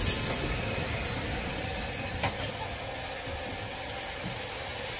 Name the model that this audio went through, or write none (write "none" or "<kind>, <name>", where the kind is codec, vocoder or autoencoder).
none